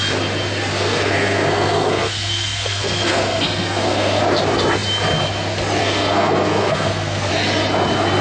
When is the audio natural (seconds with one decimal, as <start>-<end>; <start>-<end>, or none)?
0.0-0.7; 4.2-5.8; 7.3-8.2